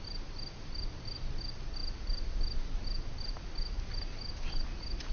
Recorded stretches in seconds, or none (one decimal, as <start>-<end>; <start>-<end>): 0.0-5.1